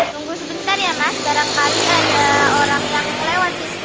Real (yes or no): yes